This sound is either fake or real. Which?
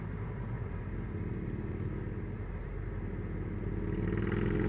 real